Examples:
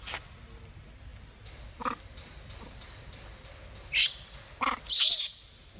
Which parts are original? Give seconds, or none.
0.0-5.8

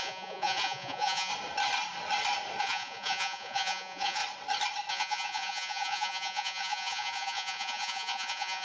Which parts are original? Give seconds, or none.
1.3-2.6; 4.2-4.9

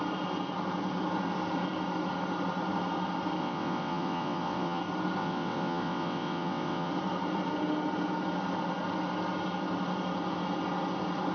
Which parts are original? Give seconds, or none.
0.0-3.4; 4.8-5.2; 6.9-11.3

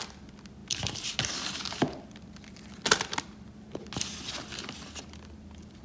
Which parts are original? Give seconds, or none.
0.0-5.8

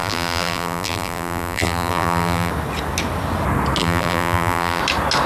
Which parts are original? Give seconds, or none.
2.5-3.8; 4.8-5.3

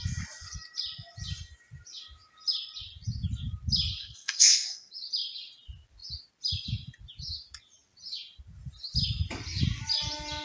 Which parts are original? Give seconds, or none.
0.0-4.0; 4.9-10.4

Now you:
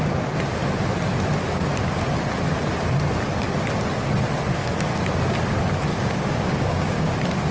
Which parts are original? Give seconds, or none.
0.0-5.9; 7.1-7.5